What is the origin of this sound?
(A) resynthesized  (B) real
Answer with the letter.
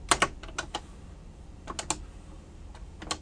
B